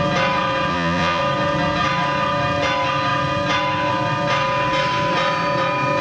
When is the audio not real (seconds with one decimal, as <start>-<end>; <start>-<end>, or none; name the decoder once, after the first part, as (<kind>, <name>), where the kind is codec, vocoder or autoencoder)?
0.7-1.2 (vocoder, Vocos)